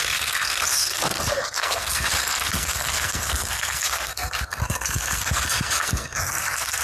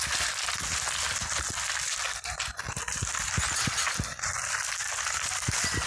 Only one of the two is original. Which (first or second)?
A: second